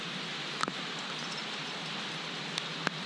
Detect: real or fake real